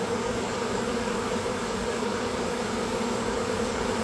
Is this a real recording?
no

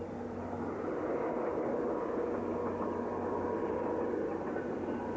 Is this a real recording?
yes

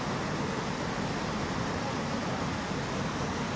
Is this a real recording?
yes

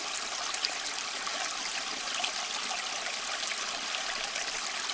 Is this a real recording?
yes